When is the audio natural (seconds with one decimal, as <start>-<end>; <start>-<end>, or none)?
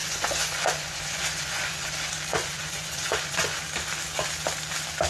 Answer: 1.9-2.3; 3.6-5.1